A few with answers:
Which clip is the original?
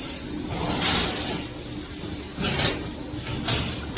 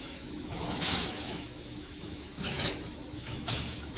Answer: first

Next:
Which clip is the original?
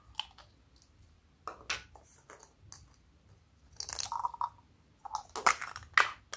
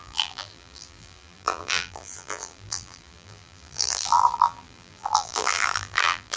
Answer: first